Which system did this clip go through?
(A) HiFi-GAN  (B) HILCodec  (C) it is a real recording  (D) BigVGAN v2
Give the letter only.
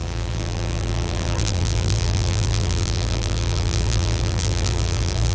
D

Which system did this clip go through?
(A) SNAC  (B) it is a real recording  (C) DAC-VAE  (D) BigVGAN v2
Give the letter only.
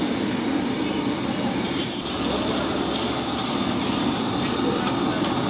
B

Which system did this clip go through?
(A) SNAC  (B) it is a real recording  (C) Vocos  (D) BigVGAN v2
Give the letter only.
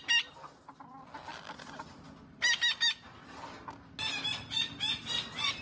B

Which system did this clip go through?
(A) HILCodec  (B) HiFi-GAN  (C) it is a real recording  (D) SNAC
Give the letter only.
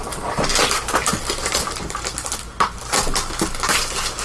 C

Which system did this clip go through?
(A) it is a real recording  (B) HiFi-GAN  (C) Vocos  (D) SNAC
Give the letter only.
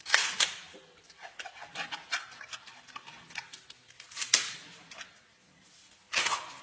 A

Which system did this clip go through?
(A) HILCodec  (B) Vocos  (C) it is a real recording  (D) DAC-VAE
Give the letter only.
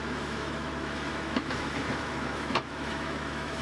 D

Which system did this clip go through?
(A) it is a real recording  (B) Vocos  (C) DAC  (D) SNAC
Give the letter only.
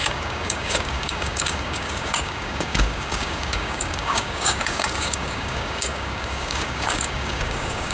C